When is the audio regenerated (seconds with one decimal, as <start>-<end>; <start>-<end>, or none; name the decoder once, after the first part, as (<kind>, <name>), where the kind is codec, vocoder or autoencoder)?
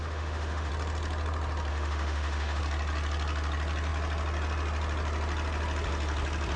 0.0-0.7 (autoencoder, DAC-VAE); 1.7-2.6